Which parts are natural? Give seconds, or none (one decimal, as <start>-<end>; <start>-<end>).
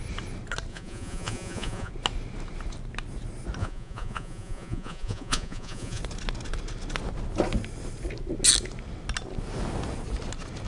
0.0-0.7; 1.9-3.6; 6.0-10.7